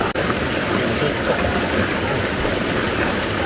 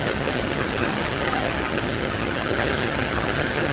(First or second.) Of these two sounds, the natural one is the first